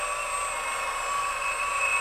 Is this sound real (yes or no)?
yes